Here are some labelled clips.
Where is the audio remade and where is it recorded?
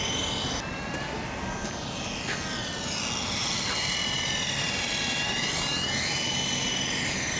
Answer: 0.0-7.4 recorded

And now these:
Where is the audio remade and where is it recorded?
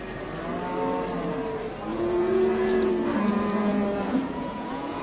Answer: 0.0-1.9 recorded; 1.9-2.9 remade; 2.9-3.3 recorded; 3.3-5.0 remade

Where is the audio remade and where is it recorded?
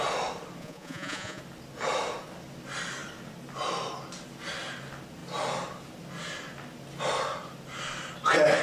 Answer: 0.0-0.6 recorded; 0.6-1.4 remade; 1.4-8.6 recorded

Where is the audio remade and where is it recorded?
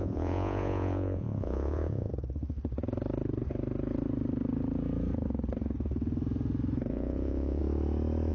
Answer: 0.0-2.1 remade; 2.1-6.9 recorded; 6.9-7.6 remade; 7.6-8.3 recorded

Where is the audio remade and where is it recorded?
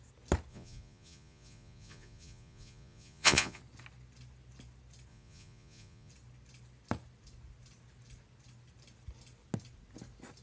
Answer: 0.0-0.5 recorded; 0.5-3.6 remade; 3.6-5.1 recorded; 5.1-6.1 remade; 6.1-10.4 recorded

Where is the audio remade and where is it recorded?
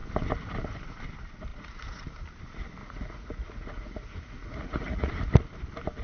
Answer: 0.0-1.5 recorded; 1.5-2.0 remade; 2.0-2.8 recorded; 2.8-5.1 remade; 5.1-6.0 recorded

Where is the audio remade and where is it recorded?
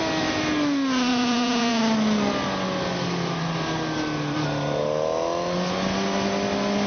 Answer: 0.0-1.1 recorded; 1.1-1.8 remade; 1.8-6.9 recorded